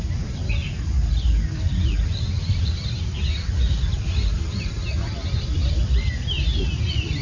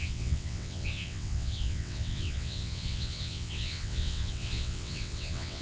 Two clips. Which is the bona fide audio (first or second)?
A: first